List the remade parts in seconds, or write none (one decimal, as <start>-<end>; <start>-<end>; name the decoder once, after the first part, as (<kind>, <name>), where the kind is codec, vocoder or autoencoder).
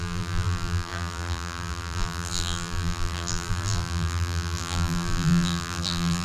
0.0-6.2 (vocoder, BigVGAN v2)